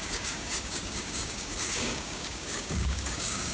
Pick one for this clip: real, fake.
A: fake